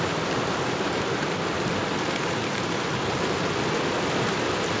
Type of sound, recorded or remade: remade